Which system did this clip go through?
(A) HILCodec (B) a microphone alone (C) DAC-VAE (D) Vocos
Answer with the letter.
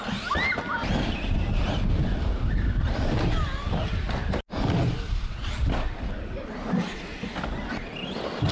B